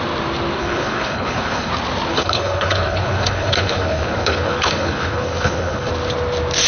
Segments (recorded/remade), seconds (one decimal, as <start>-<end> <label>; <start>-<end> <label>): 0.0-0.6 recorded; 0.6-1.7 remade; 1.7-2.1 recorded; 2.1-5.9 remade; 5.9-6.7 recorded